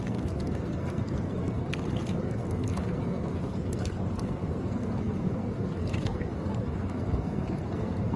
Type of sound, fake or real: fake